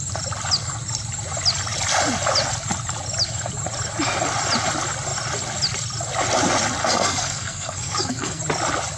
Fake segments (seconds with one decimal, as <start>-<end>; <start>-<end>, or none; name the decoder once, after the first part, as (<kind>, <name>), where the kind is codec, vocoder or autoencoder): 6.8-8.4 (codec, SNAC)